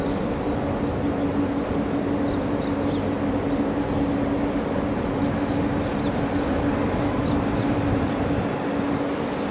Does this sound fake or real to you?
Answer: real